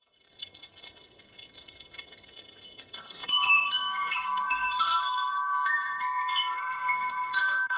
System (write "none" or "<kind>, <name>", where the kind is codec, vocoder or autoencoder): codec, SNAC